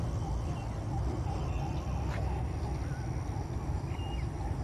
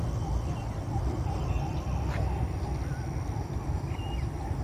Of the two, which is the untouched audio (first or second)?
first